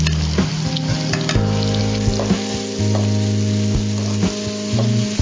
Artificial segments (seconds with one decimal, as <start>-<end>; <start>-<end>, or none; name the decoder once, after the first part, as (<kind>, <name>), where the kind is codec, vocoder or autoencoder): none